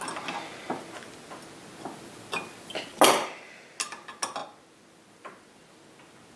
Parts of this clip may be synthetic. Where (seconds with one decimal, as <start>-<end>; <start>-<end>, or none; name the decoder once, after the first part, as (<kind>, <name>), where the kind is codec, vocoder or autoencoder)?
none